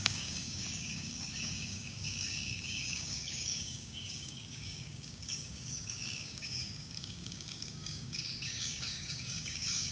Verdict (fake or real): fake